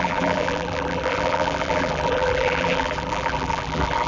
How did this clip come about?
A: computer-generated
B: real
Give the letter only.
A